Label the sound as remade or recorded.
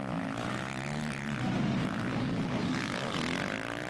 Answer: recorded